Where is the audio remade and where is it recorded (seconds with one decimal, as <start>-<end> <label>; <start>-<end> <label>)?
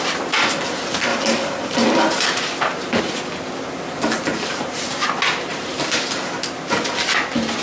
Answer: 0.0-1.1 recorded; 1.1-3.0 remade; 3.0-4.3 recorded; 4.3-5.1 remade; 5.1-5.5 recorded; 5.5-6.0 remade; 6.0-7.6 recorded